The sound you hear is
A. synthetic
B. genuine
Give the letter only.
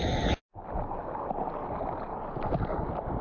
B